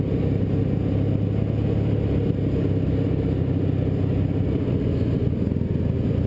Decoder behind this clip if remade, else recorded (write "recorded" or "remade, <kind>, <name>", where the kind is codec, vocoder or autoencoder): recorded